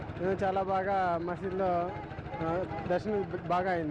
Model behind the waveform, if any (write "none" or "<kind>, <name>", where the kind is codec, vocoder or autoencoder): none